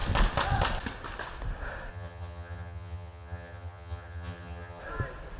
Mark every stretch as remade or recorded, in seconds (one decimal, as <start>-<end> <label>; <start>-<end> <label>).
0.0-1.9 recorded; 1.9-4.8 remade; 4.8-5.4 recorded